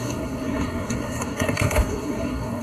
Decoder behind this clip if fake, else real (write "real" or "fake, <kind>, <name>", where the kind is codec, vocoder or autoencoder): fake, codec, SNAC